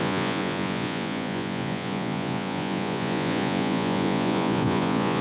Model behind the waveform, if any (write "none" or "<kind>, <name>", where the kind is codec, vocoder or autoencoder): vocoder, Vocos